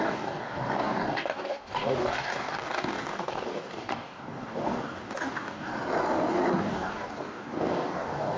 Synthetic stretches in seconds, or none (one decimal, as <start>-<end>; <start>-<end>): 0.0-5.7; 6.6-8.4